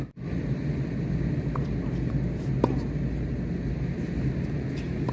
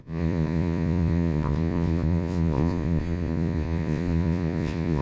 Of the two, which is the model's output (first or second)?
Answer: second